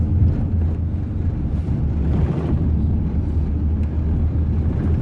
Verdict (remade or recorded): recorded